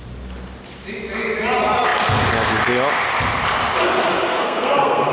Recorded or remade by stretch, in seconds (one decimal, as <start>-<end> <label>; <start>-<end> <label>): 0.0-4.3 recorded; 4.3-5.1 remade